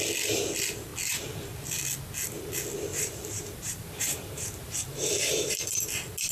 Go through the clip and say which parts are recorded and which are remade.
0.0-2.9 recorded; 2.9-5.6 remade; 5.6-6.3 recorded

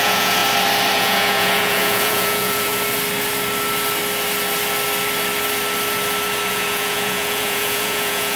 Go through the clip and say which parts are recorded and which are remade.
0.0-0.4 remade; 0.4-0.9 recorded; 0.9-2.7 remade; 2.7-6.5 recorded; 6.5-8.4 remade

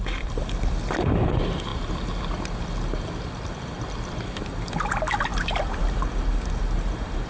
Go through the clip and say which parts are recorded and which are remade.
0.0-7.3 recorded

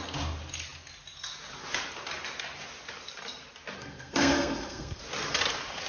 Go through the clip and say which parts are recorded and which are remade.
0.0-3.8 recorded; 3.8-5.0 remade; 5.0-5.9 recorded

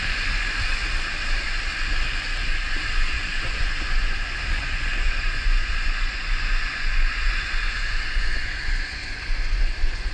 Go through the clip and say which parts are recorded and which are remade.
0.0-0.8 remade; 0.8-2.1 recorded; 2.1-10.1 remade

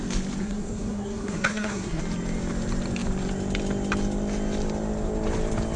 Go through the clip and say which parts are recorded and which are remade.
0.0-0.4 recorded; 0.4-2.0 remade; 2.0-5.8 recorded